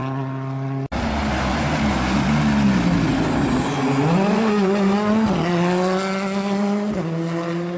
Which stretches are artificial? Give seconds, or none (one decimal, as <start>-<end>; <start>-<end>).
none